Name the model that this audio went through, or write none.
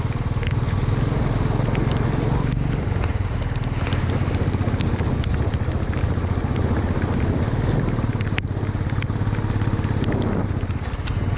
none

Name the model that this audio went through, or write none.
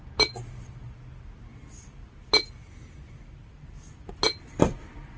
none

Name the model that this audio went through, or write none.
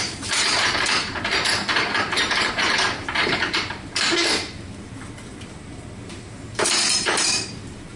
vocoder, BigVGAN v2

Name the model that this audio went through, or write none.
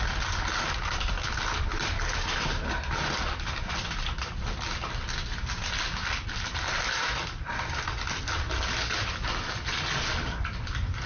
none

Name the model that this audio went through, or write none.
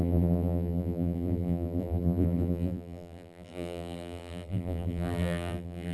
vocoder, BigVGAN v2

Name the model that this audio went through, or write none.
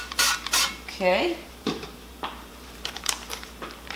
vocoder, BigVGAN v2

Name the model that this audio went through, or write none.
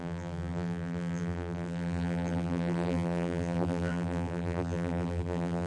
vocoder, BigVGAN v2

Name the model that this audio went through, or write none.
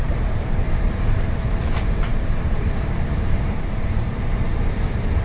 vocoder, BigVGAN v2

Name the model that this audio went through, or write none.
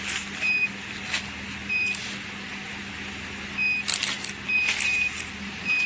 none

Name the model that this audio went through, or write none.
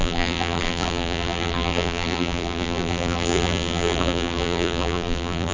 vocoder, BigVGAN v2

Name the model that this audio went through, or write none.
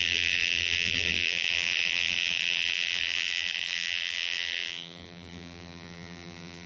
vocoder, BigVGAN v2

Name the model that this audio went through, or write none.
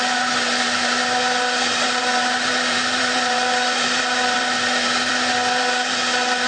vocoder, BigVGAN v2